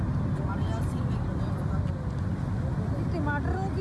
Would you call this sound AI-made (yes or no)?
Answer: no